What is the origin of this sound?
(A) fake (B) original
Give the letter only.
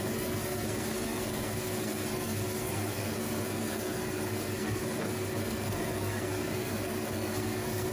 A